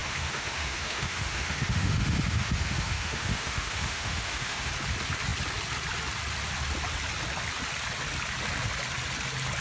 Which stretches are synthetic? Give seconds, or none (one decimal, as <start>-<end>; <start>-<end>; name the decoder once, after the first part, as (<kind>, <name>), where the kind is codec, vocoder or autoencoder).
0.0-4.7 (autoencoder, DAC-VAE)

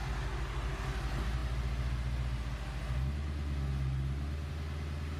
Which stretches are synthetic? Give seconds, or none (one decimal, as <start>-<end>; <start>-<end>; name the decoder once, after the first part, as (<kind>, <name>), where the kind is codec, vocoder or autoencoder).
none

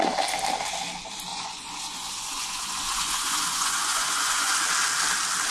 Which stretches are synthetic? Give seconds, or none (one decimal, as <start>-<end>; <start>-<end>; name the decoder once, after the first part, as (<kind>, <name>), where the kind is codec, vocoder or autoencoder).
1.3-4.6 (vocoder, Vocos)

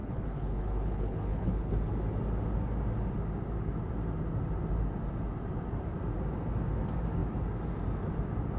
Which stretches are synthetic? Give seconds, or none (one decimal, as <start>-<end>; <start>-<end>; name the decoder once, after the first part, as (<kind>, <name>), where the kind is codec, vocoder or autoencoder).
0.0-1.7 (codec, HILCodec)

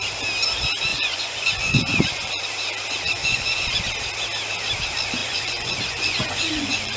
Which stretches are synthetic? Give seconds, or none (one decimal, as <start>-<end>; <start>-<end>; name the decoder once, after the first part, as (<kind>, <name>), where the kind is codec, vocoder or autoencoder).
0.9-2.4 (vocoder, Vocos); 3.2-3.7; 5.2-7.0